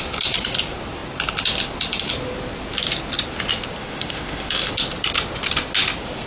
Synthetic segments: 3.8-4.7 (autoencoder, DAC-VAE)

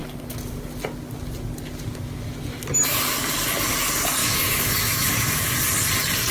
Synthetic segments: 4.2-5.5 (autoencoder, DAC-VAE)

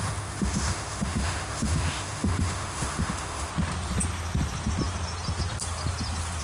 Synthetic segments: 0.0-3.5 (autoencoder, DAC-VAE)